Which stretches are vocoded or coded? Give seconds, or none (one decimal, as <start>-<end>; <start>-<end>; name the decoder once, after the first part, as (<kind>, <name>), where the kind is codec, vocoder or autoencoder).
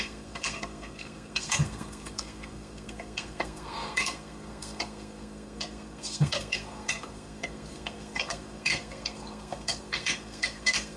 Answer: 0.0-11.0 (codec, SNAC)